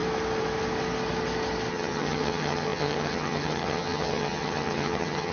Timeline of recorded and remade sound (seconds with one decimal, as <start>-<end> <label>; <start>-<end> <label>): 0.0-1.7 recorded; 1.7-5.3 remade